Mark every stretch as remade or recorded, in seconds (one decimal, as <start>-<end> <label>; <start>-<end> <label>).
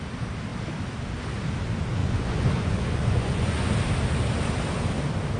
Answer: 0.0-2.0 recorded; 2.0-3.7 remade; 3.7-5.4 recorded